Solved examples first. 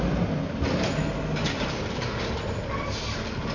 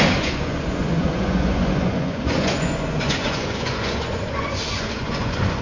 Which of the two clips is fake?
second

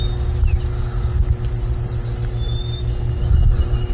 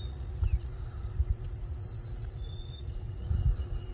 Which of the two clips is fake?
second